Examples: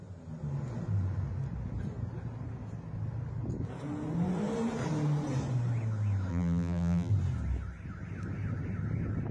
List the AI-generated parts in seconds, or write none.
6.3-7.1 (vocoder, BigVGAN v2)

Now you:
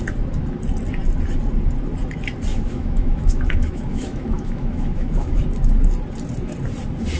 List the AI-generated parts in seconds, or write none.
2.5-5.4 (autoencoder, DAC-VAE)

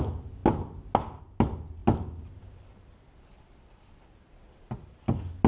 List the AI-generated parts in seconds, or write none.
none

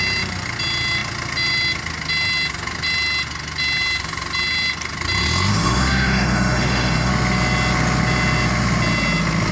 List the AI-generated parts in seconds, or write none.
5.5-7.1 (autoencoder, DAC-VAE)

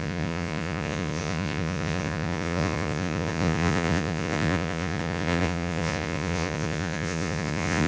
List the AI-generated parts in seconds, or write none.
0.0-7.9 (vocoder, Vocos)

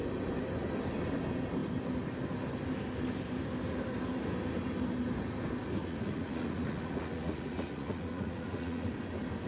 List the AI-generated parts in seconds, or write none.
5.8-8.9 (vocoder, Vocos)